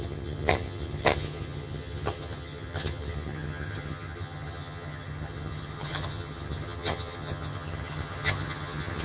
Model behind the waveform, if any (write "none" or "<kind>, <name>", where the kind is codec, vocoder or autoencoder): vocoder, HiFi-GAN